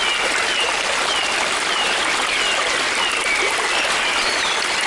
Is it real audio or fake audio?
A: real